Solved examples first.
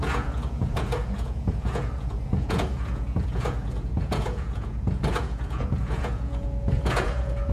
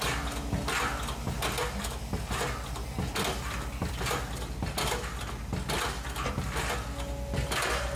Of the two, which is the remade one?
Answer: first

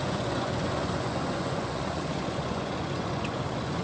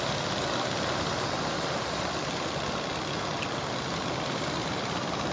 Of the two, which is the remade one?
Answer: first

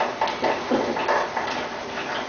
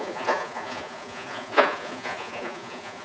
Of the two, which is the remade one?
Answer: second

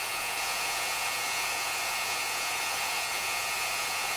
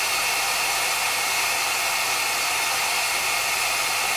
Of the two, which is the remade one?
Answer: first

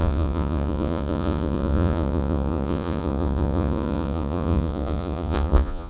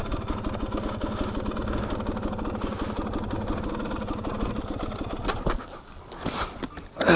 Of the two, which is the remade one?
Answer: first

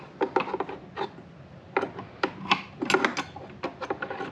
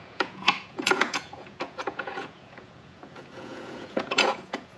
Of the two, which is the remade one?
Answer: second